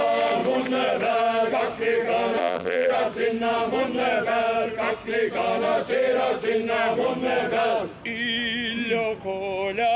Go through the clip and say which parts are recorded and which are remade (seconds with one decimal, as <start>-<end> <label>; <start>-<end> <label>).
0.0-2.4 recorded; 2.4-2.9 remade; 2.9-10.0 recorded